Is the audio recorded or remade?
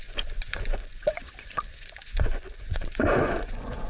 remade